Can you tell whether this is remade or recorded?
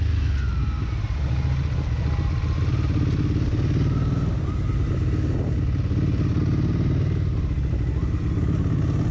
recorded